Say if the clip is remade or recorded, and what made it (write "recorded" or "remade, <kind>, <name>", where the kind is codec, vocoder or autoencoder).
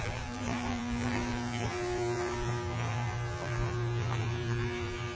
remade, vocoder, BigVGAN v2